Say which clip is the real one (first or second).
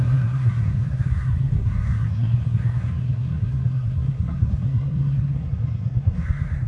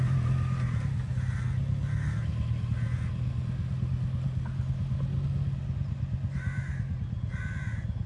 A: second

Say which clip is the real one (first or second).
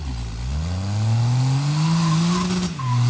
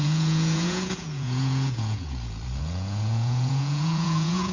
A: first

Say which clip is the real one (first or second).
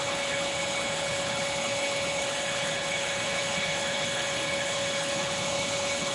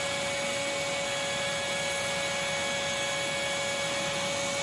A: second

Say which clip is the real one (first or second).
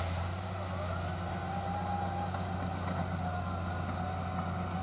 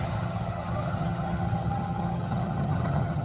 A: first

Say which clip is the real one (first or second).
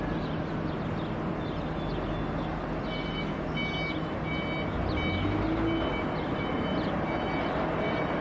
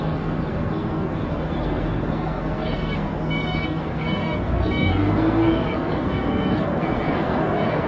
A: first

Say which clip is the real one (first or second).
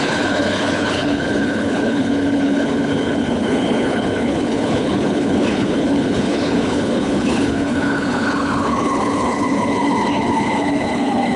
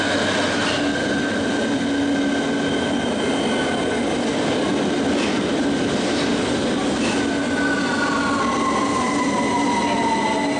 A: second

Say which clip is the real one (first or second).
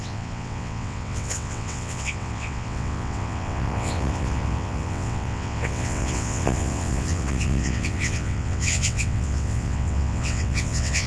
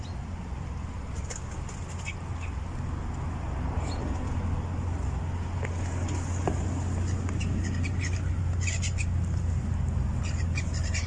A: second